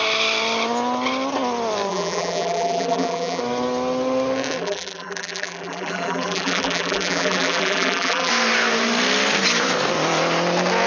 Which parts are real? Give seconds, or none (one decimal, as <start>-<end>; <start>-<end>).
0.0-1.9; 3.4-4.6; 8.3-10.9